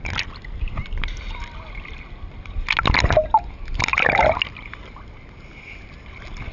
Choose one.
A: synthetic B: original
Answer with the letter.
B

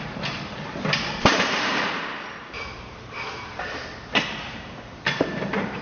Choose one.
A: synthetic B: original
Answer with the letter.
A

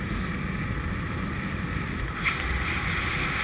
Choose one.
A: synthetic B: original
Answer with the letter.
B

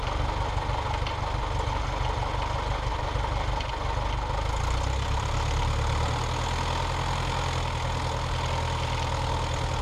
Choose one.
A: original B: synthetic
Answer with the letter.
A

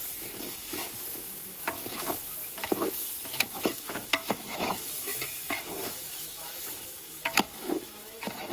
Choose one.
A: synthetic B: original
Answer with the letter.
A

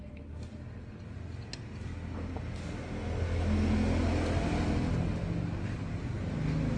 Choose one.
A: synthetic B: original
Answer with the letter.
B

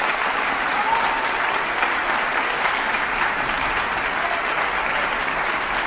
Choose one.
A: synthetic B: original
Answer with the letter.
B